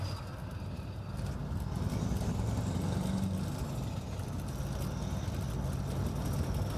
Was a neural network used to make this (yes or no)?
no